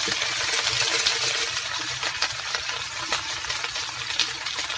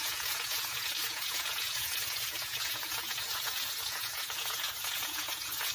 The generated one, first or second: second